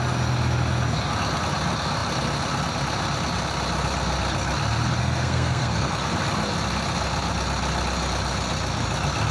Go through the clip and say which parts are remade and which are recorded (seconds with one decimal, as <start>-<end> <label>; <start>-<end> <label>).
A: 0.0-5.0 recorded; 5.0-5.9 remade; 5.9-9.3 recorded